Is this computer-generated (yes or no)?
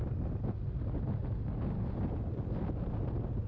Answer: no